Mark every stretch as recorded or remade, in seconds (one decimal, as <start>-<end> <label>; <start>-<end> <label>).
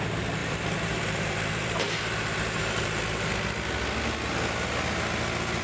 0.0-0.4 recorded; 0.4-3.3 remade; 3.3-5.6 recorded